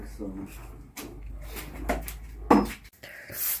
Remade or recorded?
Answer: recorded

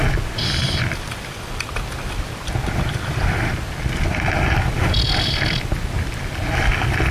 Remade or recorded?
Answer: recorded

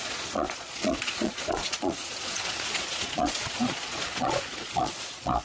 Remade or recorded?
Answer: remade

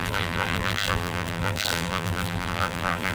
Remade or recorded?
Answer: remade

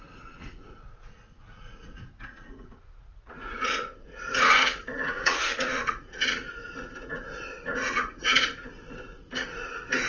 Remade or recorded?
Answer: remade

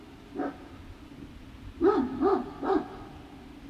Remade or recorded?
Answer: recorded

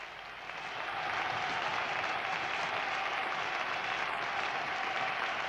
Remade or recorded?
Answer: recorded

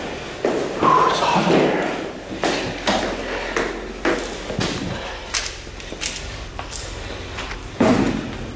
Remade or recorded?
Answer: recorded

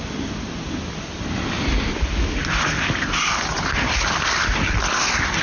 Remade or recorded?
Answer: recorded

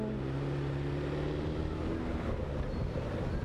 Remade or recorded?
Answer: recorded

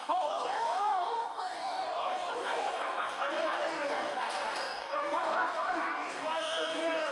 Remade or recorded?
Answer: remade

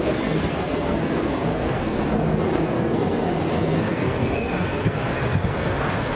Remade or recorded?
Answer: remade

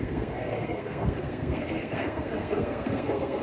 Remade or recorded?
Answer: remade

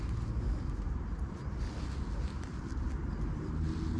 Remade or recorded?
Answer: recorded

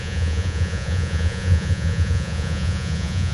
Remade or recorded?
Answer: remade